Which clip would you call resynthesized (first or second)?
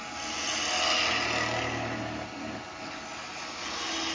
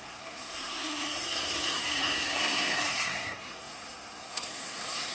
second